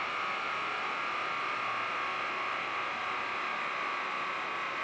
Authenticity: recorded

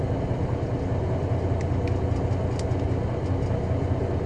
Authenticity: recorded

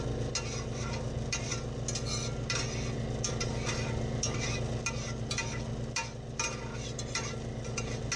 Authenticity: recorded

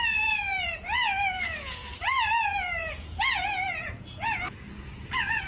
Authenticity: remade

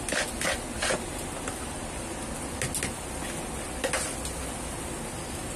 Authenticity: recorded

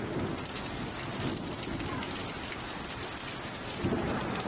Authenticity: recorded